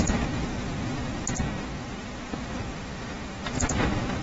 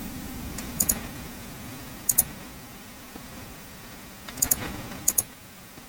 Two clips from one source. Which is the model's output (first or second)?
second